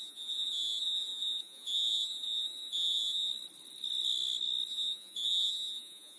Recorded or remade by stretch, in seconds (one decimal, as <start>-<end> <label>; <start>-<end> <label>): 0.0-3.3 remade; 3.3-4.7 recorded; 4.7-6.2 remade